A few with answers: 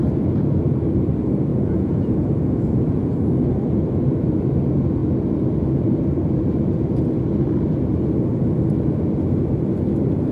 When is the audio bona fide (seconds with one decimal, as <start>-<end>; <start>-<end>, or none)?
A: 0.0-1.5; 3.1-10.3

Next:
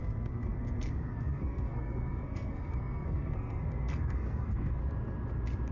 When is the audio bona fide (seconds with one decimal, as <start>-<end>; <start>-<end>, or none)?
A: 4.8-5.7

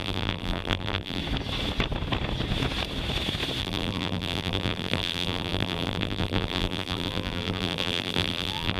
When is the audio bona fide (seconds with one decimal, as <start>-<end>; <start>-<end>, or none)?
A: 1.2-3.6

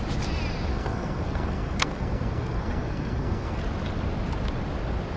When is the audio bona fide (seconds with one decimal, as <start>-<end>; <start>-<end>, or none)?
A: 0.0-0.7; 3.6-5.2

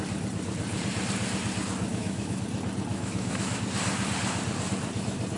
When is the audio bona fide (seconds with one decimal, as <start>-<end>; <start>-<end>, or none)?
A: 0.0-1.9; 2.4-2.9; 3.6-5.4

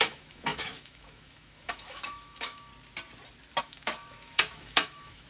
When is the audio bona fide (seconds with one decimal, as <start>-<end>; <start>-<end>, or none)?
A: 2.7-3.6